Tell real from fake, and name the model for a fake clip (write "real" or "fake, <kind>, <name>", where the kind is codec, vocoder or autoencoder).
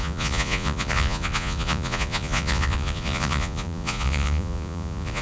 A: fake, vocoder, Vocos